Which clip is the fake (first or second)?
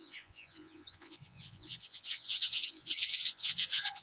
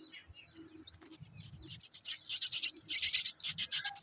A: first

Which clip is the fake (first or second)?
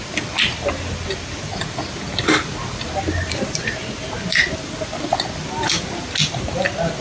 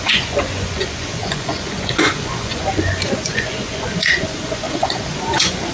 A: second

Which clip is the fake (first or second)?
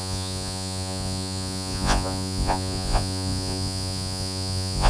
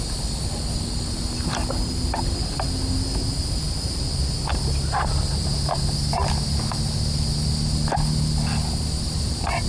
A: first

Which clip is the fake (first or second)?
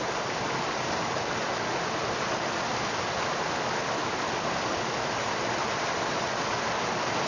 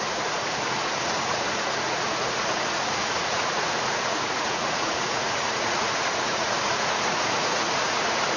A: second